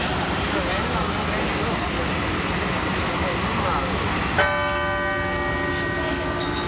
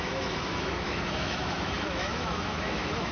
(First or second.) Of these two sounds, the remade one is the second